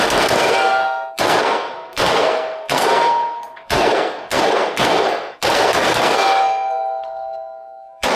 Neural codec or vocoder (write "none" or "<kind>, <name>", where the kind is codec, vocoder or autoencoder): codec, SNAC